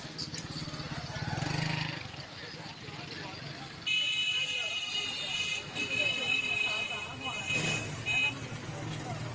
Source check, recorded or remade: recorded